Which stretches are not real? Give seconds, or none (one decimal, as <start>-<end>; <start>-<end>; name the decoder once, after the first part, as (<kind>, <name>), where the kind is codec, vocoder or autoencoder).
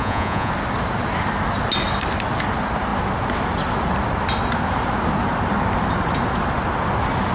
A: 0.0-0.5 (vocoder, Vocos)